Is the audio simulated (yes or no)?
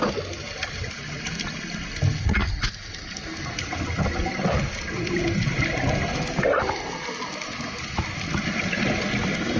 no